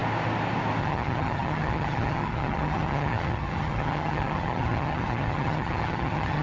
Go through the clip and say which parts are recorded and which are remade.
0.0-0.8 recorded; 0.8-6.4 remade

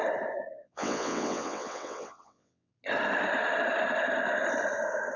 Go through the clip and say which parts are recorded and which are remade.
0.0-0.6 recorded; 0.6-2.7 remade; 2.7-5.2 recorded

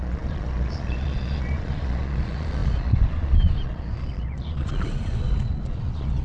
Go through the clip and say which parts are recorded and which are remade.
0.0-6.2 remade

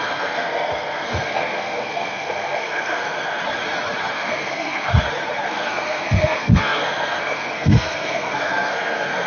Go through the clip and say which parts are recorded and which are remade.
0.0-3.4 remade; 3.4-4.1 recorded; 4.1-4.9 remade; 4.9-5.5 recorded; 5.5-9.3 remade

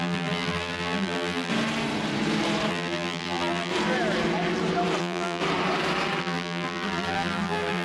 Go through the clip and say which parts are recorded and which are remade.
0.0-1.5 remade; 1.5-2.7 recorded; 2.7-3.7 remade; 3.7-5.0 recorded; 5.0-5.4 remade; 5.4-6.2 recorded; 6.2-7.8 remade

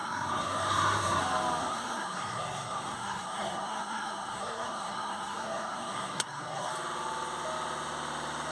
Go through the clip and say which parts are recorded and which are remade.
0.0-1.2 remade; 1.2-1.6 recorded; 1.6-6.7 remade; 6.7-8.5 recorded